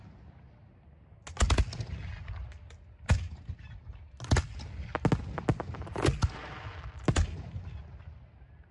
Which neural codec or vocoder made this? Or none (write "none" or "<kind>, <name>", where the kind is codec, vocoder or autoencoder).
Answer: none